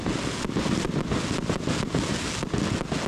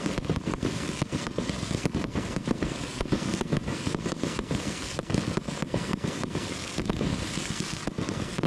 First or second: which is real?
first